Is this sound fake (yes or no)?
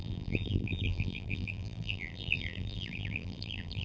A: yes